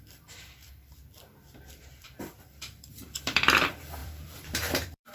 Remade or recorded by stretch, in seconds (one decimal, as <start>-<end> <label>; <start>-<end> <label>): 0.0-1.0 remade; 1.0-1.9 recorded; 1.9-5.1 remade